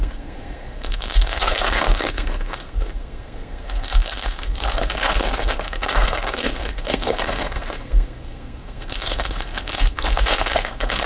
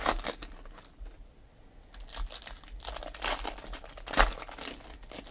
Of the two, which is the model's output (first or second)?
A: first